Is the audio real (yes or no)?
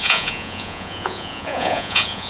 no